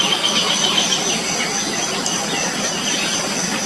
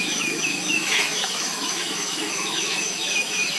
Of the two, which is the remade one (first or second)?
second